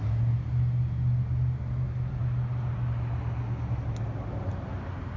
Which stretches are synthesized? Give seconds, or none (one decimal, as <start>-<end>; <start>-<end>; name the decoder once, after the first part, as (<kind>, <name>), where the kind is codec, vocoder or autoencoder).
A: none